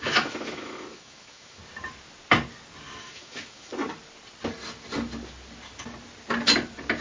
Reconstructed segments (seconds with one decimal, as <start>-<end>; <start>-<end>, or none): 0.0-1.6; 3.0-3.7